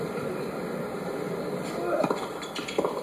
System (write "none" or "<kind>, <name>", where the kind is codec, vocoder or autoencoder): none